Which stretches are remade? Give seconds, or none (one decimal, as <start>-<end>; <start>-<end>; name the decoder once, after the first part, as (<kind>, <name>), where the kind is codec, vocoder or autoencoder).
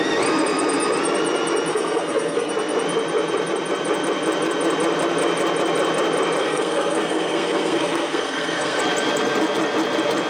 1.7-2.5 (codec, SNAC); 6.4-8.8